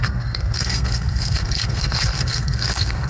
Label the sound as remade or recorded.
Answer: remade